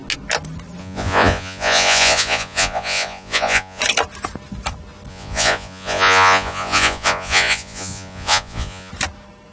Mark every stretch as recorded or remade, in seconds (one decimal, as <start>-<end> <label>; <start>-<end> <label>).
0.0-0.8 recorded; 0.8-3.8 remade; 3.8-5.1 recorded; 5.1-8.9 remade; 8.9-9.5 recorded